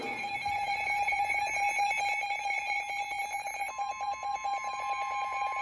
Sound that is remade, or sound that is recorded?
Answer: remade